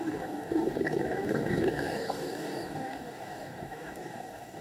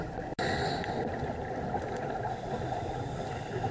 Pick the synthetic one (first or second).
first